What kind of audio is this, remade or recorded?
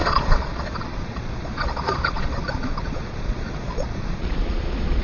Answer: remade